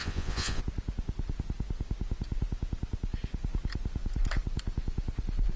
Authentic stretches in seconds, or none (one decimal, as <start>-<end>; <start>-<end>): 0.6-5.6